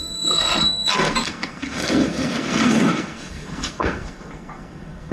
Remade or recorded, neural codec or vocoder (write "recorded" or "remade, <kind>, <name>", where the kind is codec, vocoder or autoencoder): remade, codec, SNAC